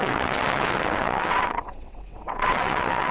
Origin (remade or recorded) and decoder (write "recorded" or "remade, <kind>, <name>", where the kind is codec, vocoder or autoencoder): remade, vocoder, WaveNeXt